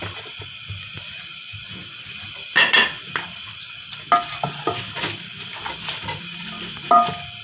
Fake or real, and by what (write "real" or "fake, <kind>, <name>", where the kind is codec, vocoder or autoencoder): real